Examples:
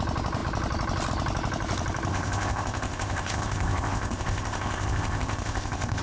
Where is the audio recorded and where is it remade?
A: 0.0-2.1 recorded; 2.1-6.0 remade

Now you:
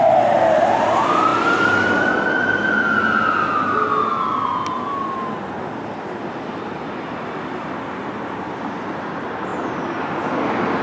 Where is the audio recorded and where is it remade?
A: 0.0-10.8 recorded